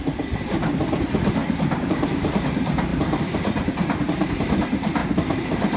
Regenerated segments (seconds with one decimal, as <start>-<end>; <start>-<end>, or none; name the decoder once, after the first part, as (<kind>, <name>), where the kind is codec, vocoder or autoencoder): 1.4-2.3 (vocoder, BigVGAN v2); 2.9-4.4; 5.0-5.8